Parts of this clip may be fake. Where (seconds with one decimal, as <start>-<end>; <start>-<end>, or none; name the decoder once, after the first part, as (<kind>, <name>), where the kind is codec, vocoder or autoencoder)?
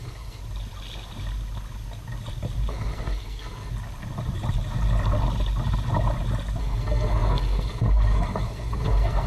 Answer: 0.0-0.4 (codec, SNAC); 2.7-3.7; 6.6-9.3